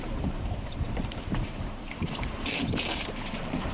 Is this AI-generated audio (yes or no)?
yes